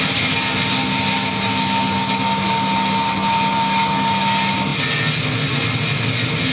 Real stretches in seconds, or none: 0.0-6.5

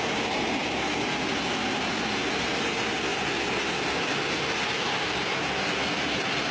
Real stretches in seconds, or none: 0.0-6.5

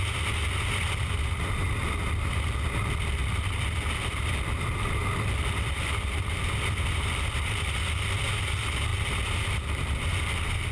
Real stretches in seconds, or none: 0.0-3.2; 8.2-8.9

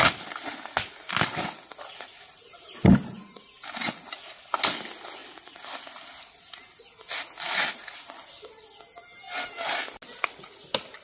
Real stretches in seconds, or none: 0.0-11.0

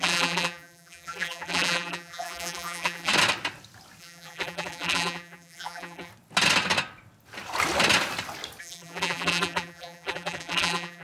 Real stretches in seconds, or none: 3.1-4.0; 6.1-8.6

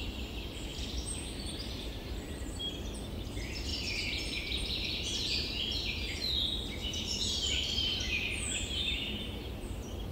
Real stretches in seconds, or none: 0.0-0.7; 2.7-3.7; 6.3-6.8; 9.7-10.1